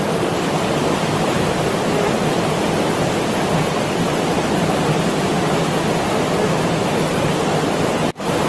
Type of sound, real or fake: fake